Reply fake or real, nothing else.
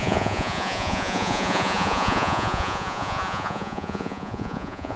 fake